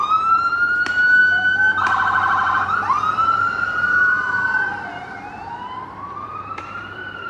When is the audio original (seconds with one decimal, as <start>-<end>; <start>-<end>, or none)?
none